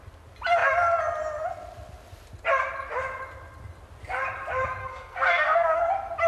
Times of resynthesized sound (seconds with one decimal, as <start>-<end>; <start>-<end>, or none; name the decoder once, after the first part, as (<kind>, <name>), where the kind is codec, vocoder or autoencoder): 4.8-5.8 (codec, SNAC)